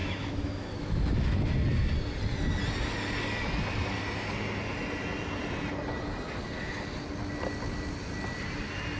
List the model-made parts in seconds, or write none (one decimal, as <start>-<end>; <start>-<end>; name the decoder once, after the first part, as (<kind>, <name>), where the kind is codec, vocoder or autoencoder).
0.0-1.5 (autoencoder, DAC-VAE)